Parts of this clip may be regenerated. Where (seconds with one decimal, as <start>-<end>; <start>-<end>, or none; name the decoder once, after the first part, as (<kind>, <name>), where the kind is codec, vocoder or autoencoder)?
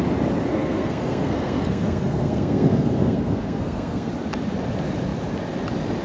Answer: 0.5-4.1 (codec, SNAC)